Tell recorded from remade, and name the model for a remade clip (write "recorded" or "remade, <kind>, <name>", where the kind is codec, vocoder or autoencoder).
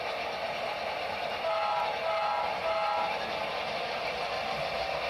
recorded